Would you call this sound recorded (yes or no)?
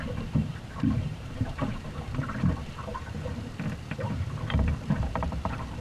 no